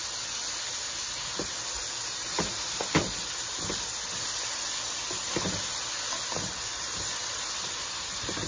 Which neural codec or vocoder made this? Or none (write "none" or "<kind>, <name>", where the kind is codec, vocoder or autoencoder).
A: none